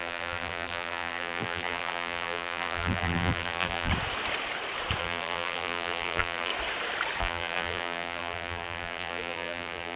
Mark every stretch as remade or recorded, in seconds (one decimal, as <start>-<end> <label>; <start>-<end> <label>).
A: 0.0-3.9 remade; 3.9-5.0 recorded; 5.0-6.5 remade; 6.5-7.2 recorded; 7.2-10.0 remade